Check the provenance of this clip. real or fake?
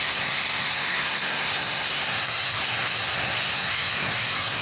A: fake